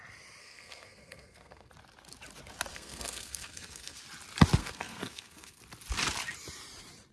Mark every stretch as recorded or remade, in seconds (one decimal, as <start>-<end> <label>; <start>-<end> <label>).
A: 0.0-0.4 recorded; 0.4-1.7 remade; 1.7-2.7 recorded; 2.7-4.0 remade; 4.0-4.6 recorded; 4.6-5.6 remade; 5.6-7.1 recorded